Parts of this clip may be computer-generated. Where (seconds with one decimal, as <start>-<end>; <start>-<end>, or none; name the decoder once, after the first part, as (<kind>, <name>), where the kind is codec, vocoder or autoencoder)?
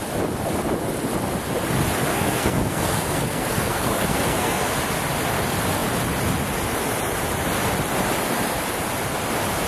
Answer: 2.1-4.7 (codec, SNAC)